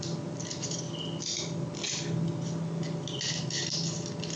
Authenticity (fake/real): real